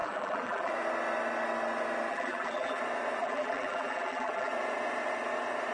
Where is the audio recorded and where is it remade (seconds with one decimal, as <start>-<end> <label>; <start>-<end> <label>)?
0.0-0.7 remade; 0.7-2.1 recorded; 2.1-2.8 remade; 2.8-3.2 recorded; 3.2-4.5 remade; 4.5-5.7 recorded